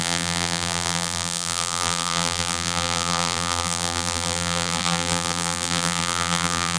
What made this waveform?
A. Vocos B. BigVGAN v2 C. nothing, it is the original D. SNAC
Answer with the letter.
B